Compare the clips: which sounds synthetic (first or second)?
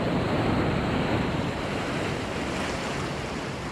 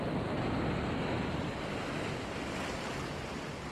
first